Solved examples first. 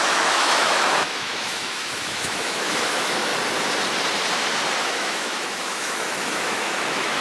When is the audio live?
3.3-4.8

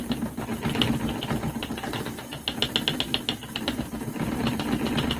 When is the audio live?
0.0-5.2